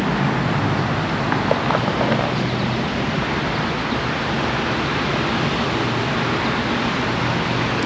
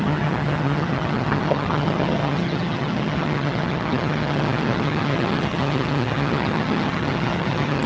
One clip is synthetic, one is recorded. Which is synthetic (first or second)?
second